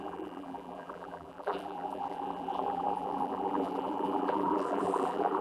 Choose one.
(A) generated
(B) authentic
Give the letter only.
A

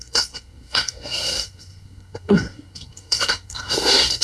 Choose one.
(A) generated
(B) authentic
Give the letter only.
A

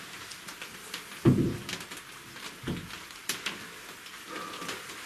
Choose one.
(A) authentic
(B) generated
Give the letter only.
A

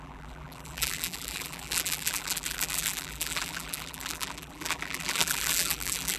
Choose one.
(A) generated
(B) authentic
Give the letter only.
A